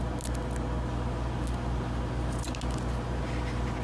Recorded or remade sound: recorded